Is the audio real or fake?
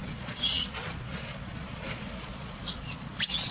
fake